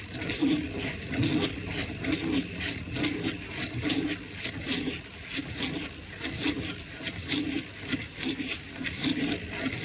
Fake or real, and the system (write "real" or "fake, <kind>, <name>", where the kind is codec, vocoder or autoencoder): real